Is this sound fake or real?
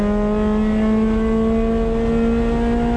real